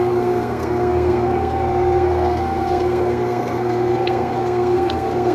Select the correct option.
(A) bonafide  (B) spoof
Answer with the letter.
B